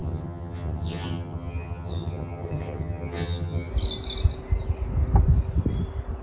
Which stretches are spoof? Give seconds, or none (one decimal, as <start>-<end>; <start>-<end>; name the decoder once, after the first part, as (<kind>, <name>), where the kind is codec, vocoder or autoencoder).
0.0-3.7 (vocoder, HiFi-GAN)